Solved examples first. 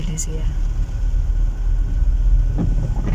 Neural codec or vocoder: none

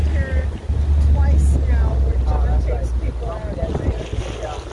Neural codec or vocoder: none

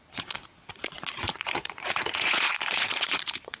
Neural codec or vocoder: vocoder, Vocos